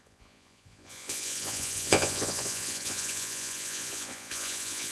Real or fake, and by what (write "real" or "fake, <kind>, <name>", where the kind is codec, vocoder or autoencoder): fake, vocoder, Vocos